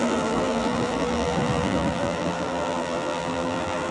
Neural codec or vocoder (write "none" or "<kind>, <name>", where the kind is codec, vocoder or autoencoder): vocoder, BigVGAN v2